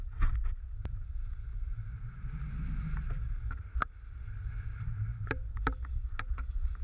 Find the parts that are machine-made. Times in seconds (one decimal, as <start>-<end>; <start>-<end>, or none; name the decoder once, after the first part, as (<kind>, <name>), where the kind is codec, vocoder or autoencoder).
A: none